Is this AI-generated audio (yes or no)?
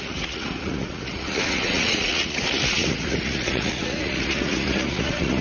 yes